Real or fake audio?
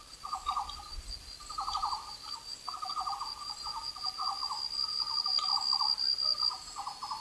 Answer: real